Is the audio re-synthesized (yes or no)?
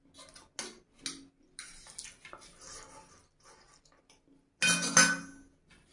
no